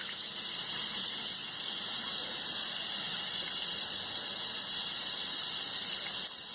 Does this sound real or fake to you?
real